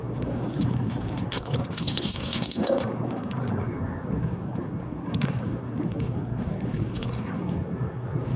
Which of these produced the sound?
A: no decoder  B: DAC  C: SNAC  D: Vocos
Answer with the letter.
C